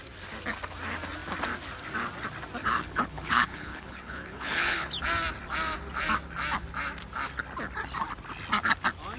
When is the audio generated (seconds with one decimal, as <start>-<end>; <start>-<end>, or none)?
2.6-4.9